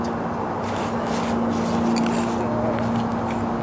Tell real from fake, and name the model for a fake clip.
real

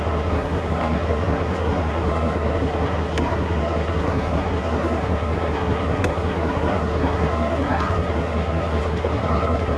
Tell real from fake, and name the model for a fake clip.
fake, codec, SNAC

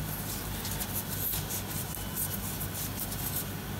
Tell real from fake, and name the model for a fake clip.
real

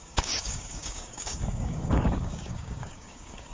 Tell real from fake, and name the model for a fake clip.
fake, codec, DAC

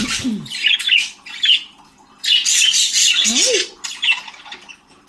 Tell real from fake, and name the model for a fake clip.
real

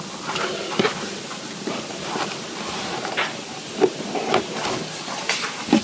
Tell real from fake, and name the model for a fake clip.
real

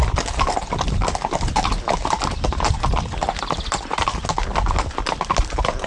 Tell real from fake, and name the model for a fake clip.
real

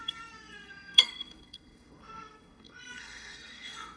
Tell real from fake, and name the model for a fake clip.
fake, codec, SNAC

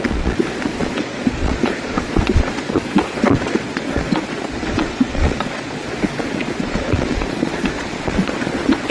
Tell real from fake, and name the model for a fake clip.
fake, vocoder, Vocos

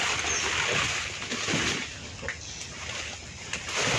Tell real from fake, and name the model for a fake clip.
real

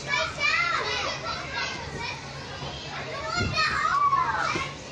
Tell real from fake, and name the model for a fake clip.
real